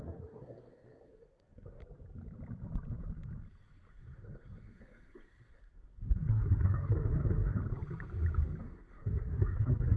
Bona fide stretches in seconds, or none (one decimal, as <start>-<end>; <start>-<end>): 1.8-3.9; 7.6-8.6